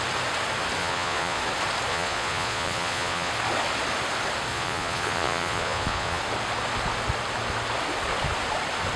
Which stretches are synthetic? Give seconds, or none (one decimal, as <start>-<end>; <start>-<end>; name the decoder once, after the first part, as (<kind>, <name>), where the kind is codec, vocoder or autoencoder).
0.8-1.4 (vocoder, Vocos); 1.9-3.3; 4.5-6.2